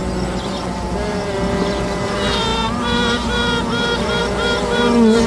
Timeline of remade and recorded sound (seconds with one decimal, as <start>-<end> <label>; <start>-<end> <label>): 0.0-5.3 recorded